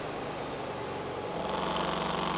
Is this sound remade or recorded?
recorded